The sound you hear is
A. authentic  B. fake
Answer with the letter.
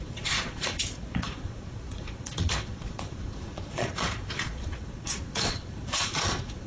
B